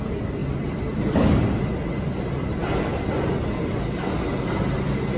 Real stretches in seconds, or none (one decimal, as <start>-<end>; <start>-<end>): 0.0-5.2